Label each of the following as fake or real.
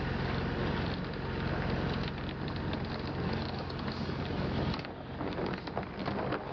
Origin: real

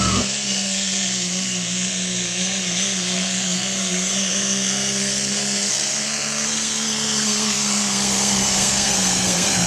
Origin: fake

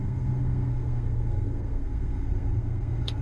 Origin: fake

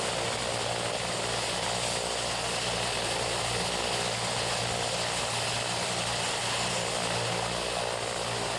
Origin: real